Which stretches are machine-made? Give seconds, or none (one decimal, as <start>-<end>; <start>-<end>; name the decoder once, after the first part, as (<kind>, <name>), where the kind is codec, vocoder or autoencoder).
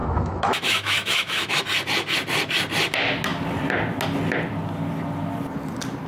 0.0-1.6 (autoencoder, DAC-VAE)